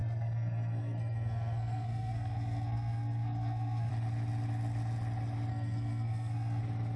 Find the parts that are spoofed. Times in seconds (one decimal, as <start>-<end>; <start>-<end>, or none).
0.0-3.9; 5.5-6.6